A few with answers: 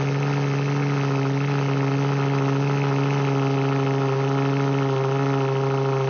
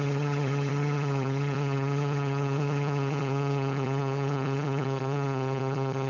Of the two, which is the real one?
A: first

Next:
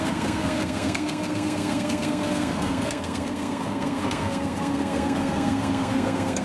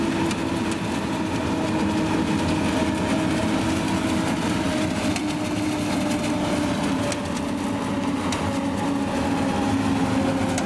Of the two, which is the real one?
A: second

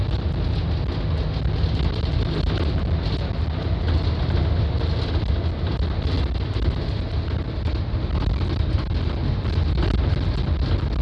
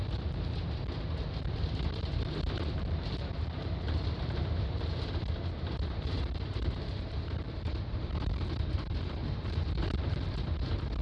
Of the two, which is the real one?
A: first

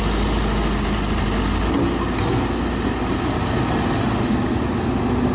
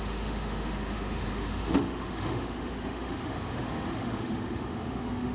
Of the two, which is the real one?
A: first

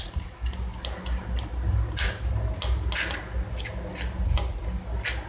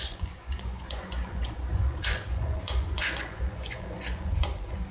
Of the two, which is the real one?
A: first